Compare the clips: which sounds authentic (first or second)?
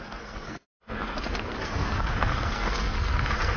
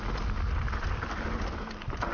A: second